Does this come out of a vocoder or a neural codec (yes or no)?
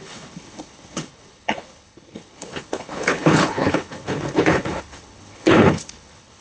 yes